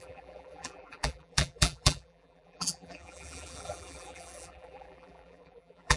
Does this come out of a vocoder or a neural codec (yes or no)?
yes